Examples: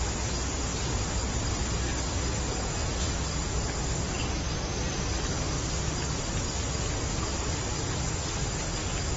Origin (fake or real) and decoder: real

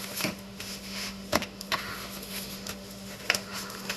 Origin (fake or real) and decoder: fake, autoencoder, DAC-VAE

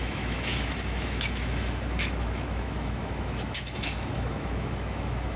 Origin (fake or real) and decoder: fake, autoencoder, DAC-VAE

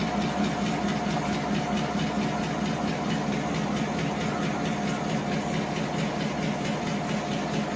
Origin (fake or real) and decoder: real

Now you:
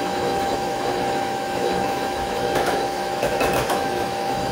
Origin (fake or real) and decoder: fake, autoencoder, DAC-VAE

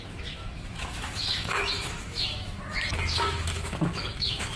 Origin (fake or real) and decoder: fake, autoencoder, DAC-VAE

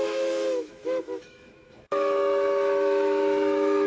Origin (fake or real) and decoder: fake, autoencoder, DAC-VAE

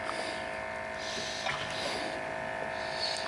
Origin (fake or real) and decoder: real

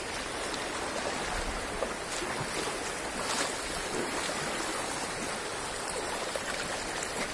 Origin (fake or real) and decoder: real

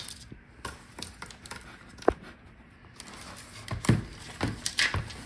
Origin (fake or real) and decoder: real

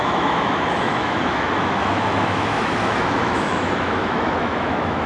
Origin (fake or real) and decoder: fake, autoencoder, DAC-VAE